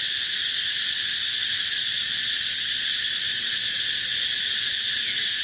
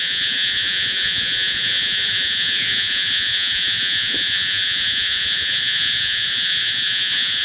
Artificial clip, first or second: second